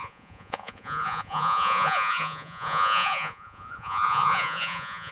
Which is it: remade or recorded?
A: remade